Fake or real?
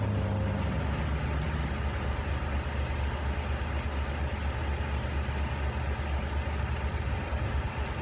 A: real